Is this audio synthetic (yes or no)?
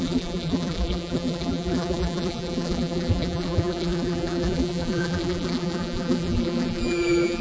yes